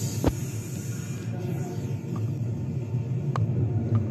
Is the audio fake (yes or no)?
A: no